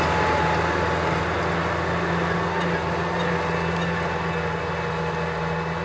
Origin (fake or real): real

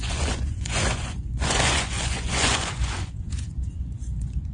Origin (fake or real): fake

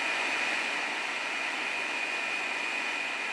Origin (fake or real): fake